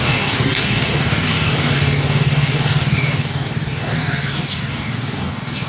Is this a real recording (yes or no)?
no